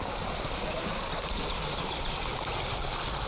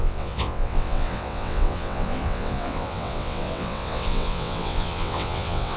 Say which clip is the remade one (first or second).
second